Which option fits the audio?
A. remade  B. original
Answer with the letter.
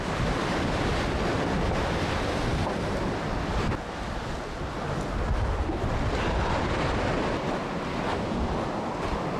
B